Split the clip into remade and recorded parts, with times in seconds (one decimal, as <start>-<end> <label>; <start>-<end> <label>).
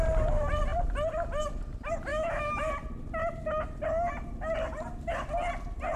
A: 0.0-2.1 recorded; 2.1-2.7 remade; 2.7-6.0 recorded